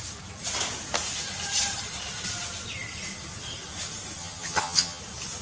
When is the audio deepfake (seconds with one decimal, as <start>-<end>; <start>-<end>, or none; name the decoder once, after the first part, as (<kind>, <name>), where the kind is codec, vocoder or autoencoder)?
4.2-5.0 (vocoder, HiFi-GAN)